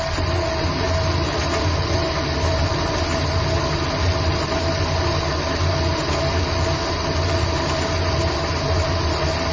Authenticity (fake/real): real